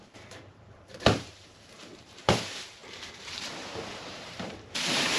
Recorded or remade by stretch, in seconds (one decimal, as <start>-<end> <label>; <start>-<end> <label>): 0.0-5.2 remade